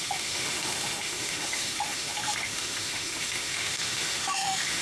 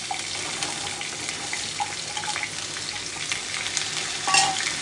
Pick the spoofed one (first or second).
first